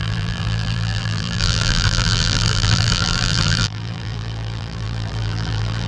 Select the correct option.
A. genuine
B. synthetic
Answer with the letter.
B